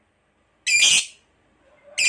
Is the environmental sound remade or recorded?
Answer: recorded